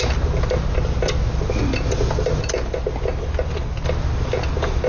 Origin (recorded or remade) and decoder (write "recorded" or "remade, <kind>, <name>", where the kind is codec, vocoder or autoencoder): recorded